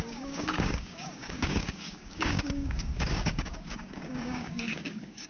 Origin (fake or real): fake